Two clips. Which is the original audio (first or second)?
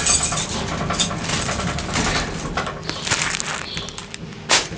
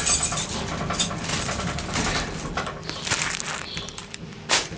first